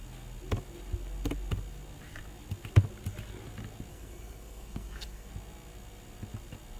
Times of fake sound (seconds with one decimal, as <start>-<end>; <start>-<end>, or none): 3.9-5.3